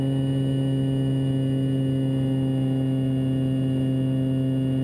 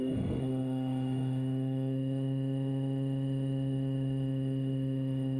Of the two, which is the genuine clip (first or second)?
first